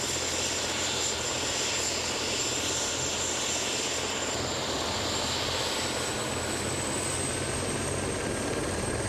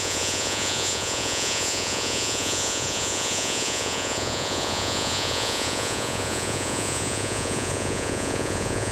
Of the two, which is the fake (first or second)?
second